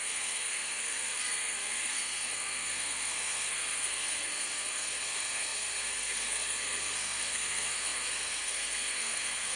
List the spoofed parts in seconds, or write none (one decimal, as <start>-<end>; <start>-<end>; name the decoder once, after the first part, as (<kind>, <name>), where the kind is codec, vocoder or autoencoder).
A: 0.0-9.6 (codec, SNAC)